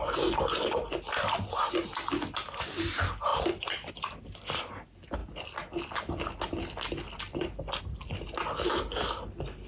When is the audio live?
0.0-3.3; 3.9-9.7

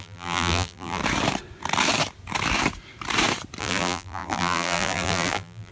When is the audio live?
1.0-3.6